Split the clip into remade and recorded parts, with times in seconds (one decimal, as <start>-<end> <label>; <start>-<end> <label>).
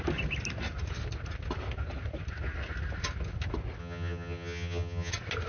0.0-3.8 recorded; 3.8-5.1 remade; 5.1-5.5 recorded